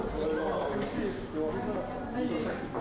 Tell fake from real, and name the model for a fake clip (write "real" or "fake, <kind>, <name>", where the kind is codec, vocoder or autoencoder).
real